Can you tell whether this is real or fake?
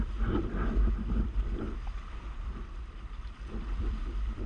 fake